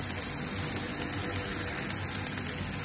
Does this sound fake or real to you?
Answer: real